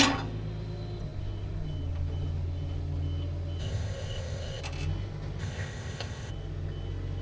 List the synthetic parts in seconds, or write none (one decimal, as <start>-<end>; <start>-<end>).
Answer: 3.6-4.6; 5.4-6.3